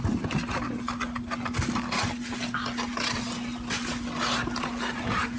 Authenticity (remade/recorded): recorded